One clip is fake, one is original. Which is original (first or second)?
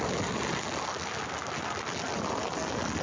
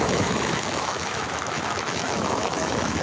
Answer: first